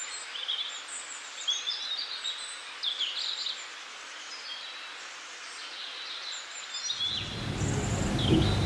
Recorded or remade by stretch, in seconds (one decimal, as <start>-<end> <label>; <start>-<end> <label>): 0.0-8.7 recorded